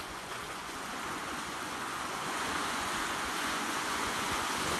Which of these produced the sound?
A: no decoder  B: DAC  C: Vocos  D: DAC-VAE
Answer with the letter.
C